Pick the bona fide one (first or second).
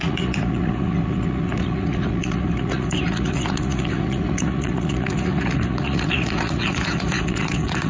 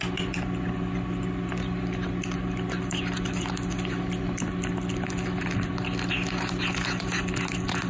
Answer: second